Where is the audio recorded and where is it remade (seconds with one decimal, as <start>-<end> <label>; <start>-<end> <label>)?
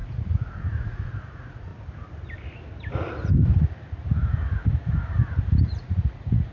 0.0-1.7 remade; 1.7-5.6 recorded; 5.6-6.5 remade